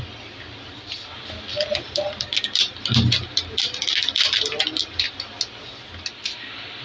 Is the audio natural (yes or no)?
yes